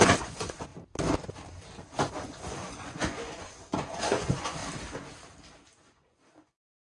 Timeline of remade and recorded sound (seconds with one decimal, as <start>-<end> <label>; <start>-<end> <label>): 0.0-0.7 remade; 0.7-2.2 recorded; 2.2-4.6 remade; 4.6-5.8 recorded; 5.8-6.9 remade